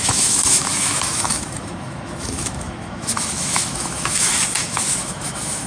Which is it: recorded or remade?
remade